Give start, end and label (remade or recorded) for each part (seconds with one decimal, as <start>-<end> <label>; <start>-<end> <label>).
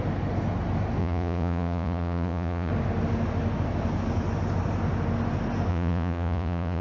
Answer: 0.0-1.0 recorded; 1.0-2.7 remade; 2.7-5.7 recorded; 5.7-6.8 remade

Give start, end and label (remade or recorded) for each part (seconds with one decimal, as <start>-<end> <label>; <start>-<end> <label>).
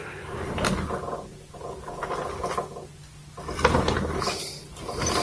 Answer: 0.0-5.2 recorded